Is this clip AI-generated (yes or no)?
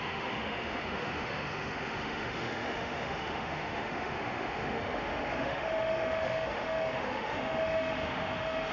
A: yes